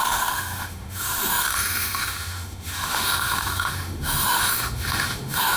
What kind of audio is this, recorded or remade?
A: remade